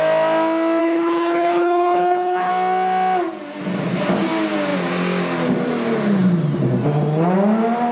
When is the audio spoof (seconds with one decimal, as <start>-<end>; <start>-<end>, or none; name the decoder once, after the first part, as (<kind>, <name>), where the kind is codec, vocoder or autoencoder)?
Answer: 0.8-2.5 (codec, HILCodec)